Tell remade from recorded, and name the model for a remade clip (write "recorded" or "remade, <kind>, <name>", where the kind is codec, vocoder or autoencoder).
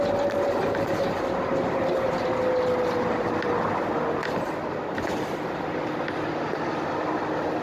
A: recorded